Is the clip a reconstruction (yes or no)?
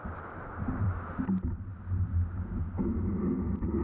no